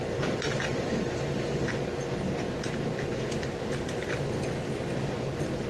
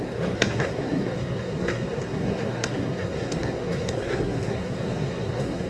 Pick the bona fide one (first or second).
first